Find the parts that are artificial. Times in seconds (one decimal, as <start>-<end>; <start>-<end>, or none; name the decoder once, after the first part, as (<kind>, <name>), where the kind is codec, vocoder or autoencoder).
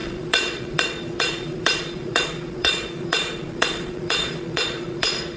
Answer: 0.0-5.4 (vocoder, Vocos)